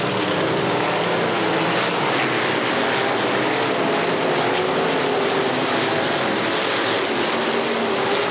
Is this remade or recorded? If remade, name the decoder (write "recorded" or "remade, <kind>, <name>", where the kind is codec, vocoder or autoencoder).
recorded